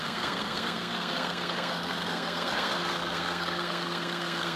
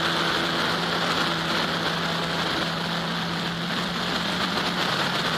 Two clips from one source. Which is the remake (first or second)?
first